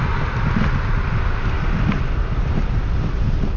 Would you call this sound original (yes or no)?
no